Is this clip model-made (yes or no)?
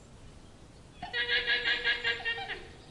no